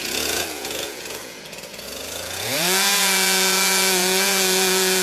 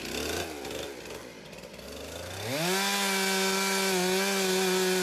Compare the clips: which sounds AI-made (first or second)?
first